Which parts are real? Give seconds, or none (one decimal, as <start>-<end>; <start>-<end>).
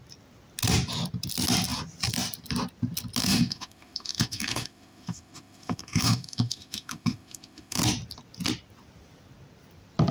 0.0-3.2; 7.8-10.1